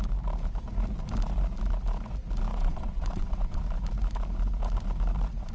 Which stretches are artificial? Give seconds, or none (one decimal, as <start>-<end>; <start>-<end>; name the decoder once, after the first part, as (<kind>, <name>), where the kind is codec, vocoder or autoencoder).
2.5-3.6 (vocoder, WaveNeXt)

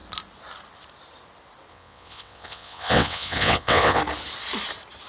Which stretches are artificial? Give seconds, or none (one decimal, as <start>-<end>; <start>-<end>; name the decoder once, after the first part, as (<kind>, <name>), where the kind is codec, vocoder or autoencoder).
1.7-4.0 (vocoder, WaveNeXt)

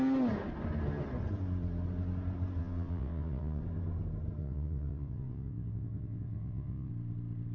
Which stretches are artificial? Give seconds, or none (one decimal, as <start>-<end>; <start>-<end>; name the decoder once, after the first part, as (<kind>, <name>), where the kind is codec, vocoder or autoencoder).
2.6-3.6 (vocoder, WaveNeXt); 4.4-6.9

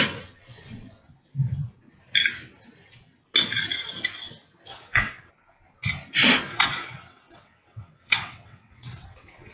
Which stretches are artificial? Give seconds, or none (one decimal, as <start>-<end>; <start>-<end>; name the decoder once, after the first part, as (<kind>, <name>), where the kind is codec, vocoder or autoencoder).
4.7-5.3 (vocoder, WaveNeXt); 6.5-9.5

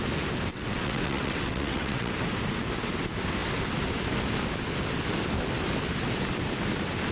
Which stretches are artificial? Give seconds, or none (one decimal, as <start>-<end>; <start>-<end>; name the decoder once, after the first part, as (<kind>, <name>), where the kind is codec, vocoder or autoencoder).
0.5-2.1 (vocoder, WaveNeXt)

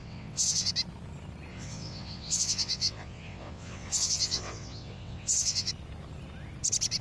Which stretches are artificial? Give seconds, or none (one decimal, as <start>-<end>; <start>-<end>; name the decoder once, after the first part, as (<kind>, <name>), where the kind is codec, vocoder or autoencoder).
0.0-0.7 (vocoder, WaveNeXt); 1.5-5.7

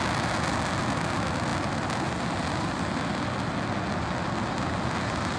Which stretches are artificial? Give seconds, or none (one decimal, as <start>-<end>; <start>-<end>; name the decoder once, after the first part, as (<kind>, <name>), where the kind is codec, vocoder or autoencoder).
none